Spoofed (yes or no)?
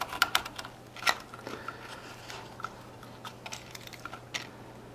no